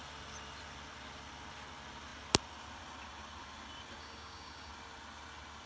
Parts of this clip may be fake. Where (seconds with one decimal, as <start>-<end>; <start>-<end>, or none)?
4.0-4.7